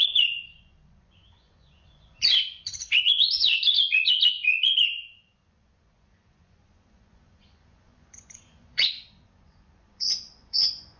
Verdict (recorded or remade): remade